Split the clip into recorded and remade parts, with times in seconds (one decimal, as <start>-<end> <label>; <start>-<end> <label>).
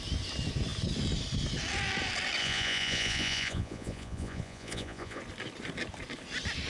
0.0-2.4 recorded; 2.4-5.2 remade; 5.2-6.7 recorded